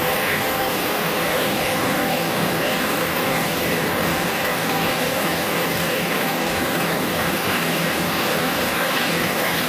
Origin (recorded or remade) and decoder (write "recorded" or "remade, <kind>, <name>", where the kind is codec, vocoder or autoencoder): remade, codec, DAC